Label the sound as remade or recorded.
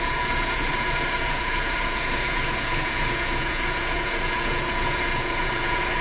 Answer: remade